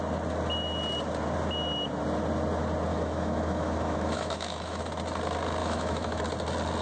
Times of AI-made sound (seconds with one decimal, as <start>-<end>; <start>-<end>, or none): 2.9-4.8; 5.6-6.2